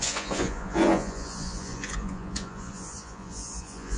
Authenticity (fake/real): fake